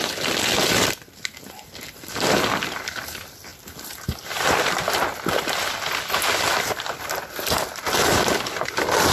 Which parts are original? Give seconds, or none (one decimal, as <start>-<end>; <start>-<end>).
0.0-9.1